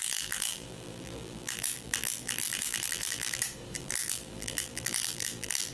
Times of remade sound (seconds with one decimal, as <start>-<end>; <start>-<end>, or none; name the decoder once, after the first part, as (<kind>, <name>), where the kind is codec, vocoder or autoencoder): 0.0-3.4 (vocoder, BigVGAN v2); 3.8-5.7